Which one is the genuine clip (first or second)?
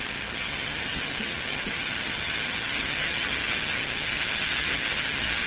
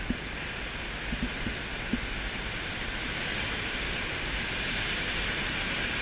second